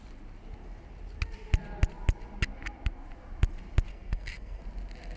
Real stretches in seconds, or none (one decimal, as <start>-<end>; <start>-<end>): 0.0-3.9; 4.6-5.2